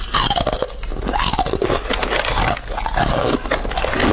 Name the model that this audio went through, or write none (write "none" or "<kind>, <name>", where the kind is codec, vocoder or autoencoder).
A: none